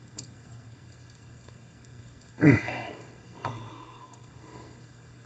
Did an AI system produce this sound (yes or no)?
yes